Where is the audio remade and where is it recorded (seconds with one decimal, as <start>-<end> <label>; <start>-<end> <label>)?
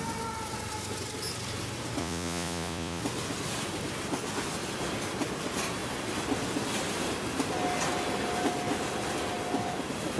0.0-2.0 recorded; 2.0-3.0 remade; 3.0-10.2 recorded